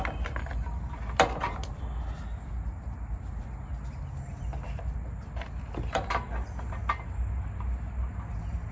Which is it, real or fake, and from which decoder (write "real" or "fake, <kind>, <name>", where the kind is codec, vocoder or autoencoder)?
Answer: real